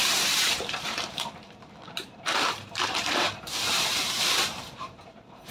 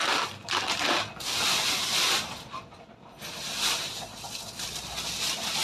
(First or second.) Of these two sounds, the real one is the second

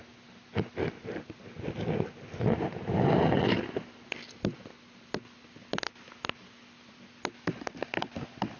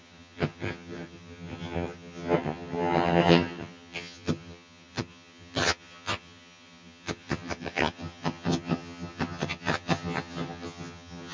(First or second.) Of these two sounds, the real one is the first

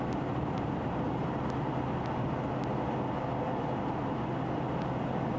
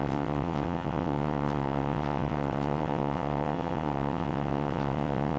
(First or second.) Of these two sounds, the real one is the first